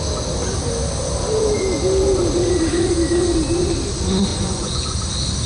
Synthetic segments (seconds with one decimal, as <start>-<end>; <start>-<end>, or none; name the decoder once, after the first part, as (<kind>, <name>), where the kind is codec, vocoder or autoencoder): 4.3-5.0 (vocoder, Vocos)

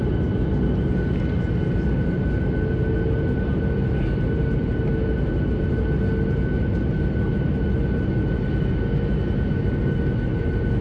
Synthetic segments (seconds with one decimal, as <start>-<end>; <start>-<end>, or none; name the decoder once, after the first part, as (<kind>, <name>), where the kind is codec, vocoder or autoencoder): 7.3-8.1 (vocoder, BigVGAN v2)

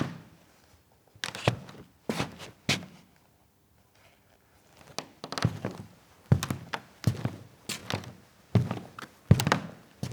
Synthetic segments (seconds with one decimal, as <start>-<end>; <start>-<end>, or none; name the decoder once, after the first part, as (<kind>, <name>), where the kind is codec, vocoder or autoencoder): none

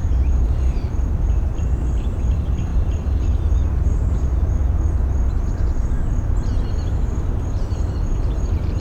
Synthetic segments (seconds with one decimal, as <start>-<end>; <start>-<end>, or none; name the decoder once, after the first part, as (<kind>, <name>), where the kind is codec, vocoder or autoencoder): 0.0-4.6 (vocoder, BigVGAN v2); 7.7-8.8